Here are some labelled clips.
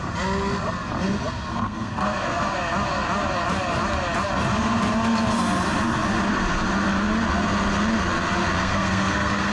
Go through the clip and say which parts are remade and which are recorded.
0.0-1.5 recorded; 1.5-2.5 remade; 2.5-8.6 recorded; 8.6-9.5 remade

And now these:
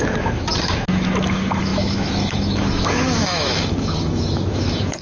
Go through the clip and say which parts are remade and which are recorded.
0.0-5.0 remade

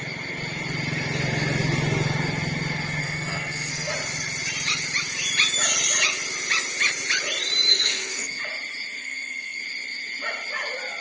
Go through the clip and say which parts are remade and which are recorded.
0.0-3.0 recorded; 3.0-3.9 remade; 3.9-7.7 recorded; 7.7-8.4 remade; 8.4-9.0 recorded; 9.0-9.6 remade; 9.6-11.0 recorded

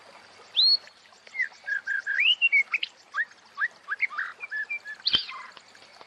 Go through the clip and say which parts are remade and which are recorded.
0.0-6.1 recorded